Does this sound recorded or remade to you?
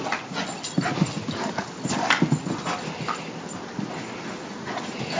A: recorded